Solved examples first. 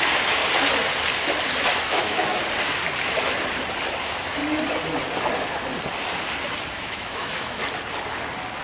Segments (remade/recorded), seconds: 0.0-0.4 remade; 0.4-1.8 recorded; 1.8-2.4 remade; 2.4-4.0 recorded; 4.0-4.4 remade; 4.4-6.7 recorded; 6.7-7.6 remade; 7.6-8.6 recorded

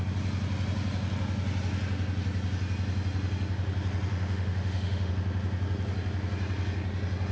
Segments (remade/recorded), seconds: 0.0-4.1 recorded; 4.1-5.1 remade; 5.1-7.3 recorded